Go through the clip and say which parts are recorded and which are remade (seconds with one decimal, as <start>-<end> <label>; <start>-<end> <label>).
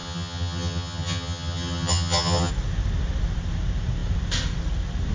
0.0-2.5 remade; 2.5-5.1 recorded